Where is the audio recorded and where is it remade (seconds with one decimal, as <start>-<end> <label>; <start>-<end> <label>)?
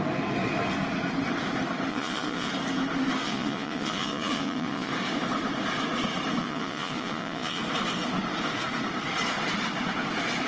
0.0-1.9 recorded; 1.9-2.5 remade; 2.5-3.2 recorded; 3.2-4.9 remade; 4.9-6.4 recorded; 6.4-7.6 remade; 7.6-10.5 recorded